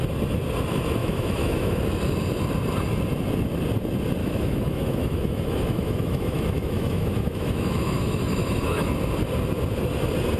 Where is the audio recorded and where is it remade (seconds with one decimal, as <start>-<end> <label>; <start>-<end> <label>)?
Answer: 0.0-1.0 recorded; 1.0-1.7 remade; 1.7-4.2 recorded; 4.2-8.9 remade; 8.9-10.4 recorded